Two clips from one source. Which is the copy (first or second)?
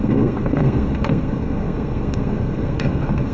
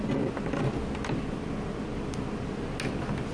first